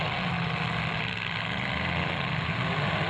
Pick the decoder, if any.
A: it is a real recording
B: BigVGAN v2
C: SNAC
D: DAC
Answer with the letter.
A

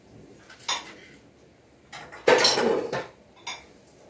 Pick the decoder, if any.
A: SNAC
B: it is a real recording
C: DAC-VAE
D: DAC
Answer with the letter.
B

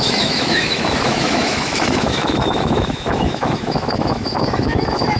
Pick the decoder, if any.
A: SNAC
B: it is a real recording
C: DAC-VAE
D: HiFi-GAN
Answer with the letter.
C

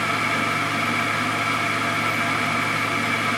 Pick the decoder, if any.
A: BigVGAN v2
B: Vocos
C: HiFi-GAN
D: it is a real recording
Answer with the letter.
D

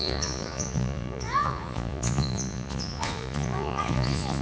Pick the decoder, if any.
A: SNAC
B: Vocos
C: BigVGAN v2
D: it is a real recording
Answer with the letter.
B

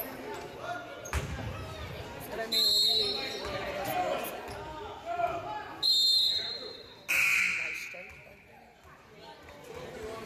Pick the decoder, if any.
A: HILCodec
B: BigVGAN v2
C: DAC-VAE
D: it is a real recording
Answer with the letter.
D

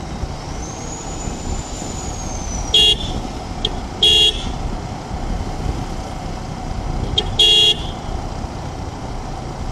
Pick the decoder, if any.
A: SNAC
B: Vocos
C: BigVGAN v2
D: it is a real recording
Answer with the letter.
D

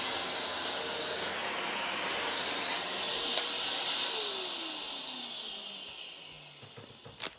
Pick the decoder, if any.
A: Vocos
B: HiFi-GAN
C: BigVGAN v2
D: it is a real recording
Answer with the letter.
D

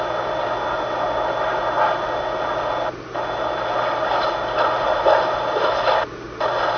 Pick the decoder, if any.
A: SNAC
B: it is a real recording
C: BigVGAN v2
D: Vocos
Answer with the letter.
B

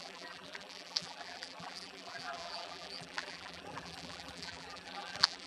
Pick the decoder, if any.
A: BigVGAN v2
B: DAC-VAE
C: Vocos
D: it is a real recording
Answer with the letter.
A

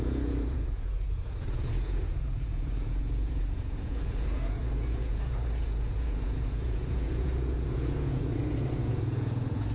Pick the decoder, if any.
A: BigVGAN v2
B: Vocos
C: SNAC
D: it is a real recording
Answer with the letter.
B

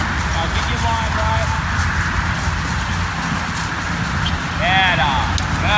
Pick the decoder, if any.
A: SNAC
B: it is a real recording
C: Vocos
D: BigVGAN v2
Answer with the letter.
B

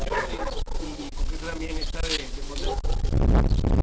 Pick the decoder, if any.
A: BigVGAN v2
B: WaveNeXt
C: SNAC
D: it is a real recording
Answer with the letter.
D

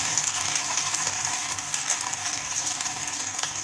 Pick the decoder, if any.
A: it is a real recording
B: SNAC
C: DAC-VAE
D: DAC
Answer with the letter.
D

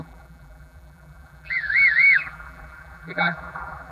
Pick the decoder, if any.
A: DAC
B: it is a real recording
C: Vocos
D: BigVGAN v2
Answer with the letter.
D